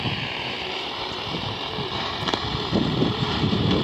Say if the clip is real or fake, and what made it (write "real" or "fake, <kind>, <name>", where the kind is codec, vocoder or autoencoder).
fake, vocoder, BigVGAN v2